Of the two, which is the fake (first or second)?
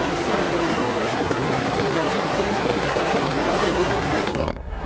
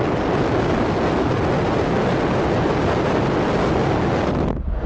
first